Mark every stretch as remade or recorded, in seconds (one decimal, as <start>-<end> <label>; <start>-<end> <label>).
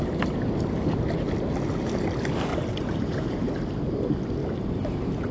0.0-2.5 recorded; 2.5-3.7 remade; 3.7-4.4 recorded; 4.4-5.3 remade